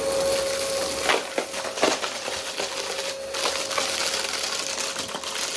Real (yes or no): yes